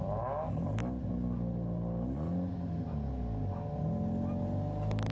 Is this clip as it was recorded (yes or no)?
yes